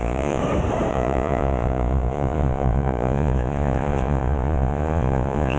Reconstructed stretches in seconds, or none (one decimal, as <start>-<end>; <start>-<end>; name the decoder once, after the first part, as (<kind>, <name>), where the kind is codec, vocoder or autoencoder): 0.0-0.4 (vocoder, Vocos); 0.9-5.6